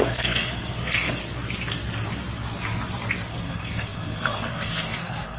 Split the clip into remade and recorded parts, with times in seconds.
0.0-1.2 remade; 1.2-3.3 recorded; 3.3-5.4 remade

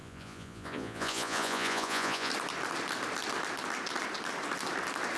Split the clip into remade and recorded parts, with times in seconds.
0.0-2.3 remade; 2.3-5.2 recorded

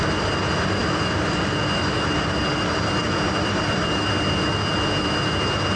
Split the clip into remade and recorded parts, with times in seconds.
0.0-5.8 recorded

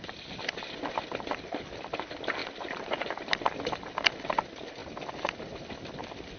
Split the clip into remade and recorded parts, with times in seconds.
0.0-6.4 recorded

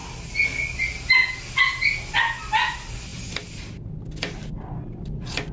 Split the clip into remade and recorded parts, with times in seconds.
0.0-5.5 recorded